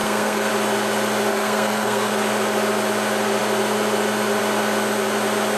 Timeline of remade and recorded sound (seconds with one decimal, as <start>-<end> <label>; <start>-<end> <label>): 0.0-0.5 remade; 0.5-1.3 recorded; 1.3-2.1 remade; 2.1-5.6 recorded